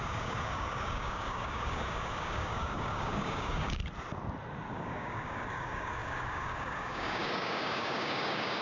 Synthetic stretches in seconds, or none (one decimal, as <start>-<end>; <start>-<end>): 0.0-3.8; 4.7-8.6